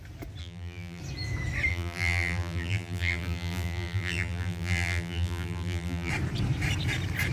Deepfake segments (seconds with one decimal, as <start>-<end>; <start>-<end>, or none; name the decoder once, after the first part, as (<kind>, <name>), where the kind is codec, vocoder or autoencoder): 0.4-1.0 (vocoder, BigVGAN v2); 1.7-6.1